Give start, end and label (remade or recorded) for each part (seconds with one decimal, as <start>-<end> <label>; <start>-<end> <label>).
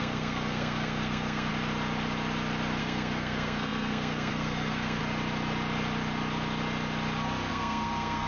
0.0-1.5 remade; 1.5-2.8 recorded; 2.8-5.0 remade; 5.0-7.5 recorded; 7.5-8.3 remade